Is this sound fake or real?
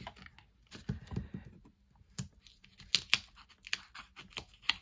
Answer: real